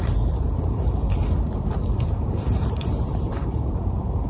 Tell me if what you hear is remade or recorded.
remade